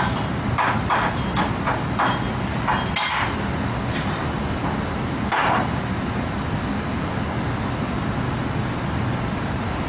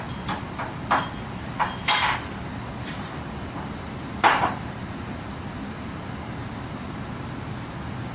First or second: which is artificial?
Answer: second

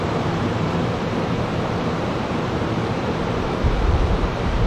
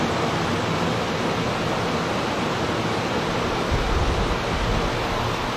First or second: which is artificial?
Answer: first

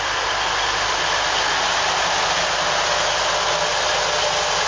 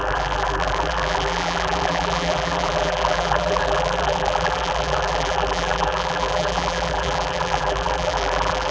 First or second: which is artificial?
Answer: second